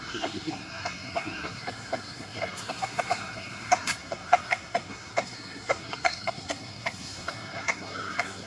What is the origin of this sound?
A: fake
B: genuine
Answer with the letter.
A